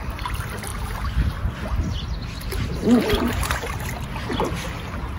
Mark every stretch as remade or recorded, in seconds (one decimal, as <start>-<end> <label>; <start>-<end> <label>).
0.0-5.2 recorded